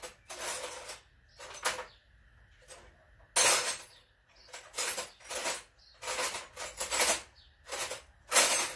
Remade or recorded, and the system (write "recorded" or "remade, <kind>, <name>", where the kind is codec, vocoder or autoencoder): recorded